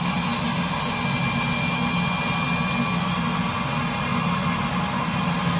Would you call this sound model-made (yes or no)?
no